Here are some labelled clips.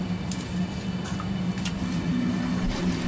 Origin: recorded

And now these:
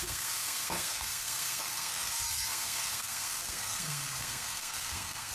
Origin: remade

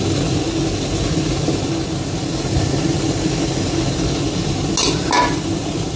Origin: recorded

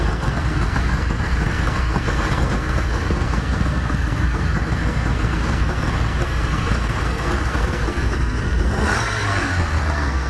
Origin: remade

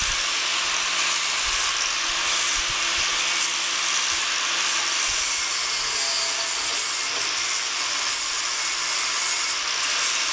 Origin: recorded